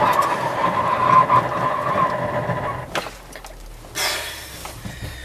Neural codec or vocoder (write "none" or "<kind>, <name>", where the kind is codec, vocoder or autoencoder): none